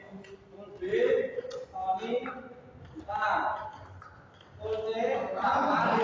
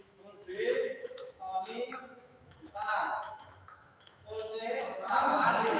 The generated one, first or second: second